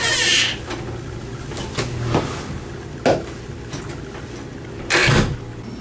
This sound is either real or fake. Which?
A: real